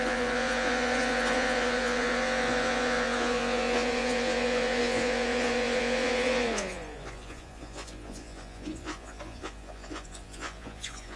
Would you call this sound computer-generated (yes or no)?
yes